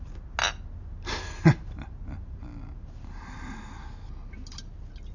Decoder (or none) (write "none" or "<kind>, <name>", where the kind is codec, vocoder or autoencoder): none